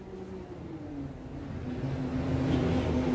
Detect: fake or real real